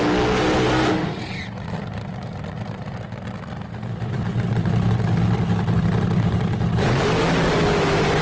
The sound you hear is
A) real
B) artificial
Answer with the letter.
A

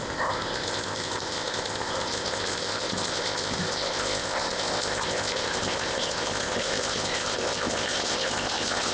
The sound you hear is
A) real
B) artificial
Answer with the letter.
B